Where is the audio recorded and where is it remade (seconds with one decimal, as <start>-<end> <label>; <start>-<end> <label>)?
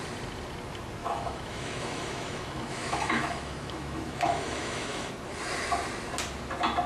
0.0-1.0 recorded; 1.0-5.1 remade; 5.1-6.9 recorded